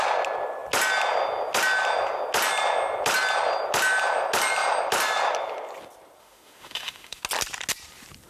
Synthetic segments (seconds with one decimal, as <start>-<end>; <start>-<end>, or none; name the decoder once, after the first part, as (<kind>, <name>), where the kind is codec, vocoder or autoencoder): 6.2-7.2 (autoencoder, DAC-VAE)